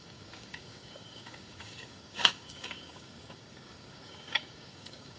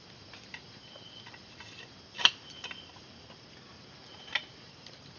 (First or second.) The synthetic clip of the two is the first